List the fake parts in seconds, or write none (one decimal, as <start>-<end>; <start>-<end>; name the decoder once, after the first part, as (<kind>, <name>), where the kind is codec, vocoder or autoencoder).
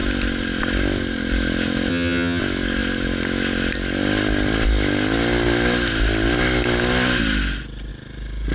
1.9-2.4 (vocoder, HiFi-GAN)